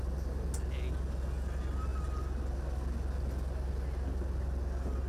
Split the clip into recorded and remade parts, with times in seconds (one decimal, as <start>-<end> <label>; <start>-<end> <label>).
0.0-5.1 recorded